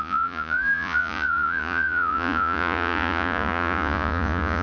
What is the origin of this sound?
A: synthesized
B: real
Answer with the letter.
A